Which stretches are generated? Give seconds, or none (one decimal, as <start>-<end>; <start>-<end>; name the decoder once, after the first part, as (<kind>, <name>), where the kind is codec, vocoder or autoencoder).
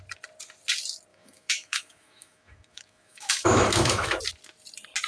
1.1-4.2 (autoencoder, DAC-VAE)